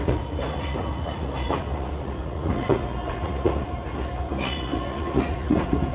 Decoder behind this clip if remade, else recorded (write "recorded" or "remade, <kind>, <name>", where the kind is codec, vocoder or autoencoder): remade, vocoder, Vocos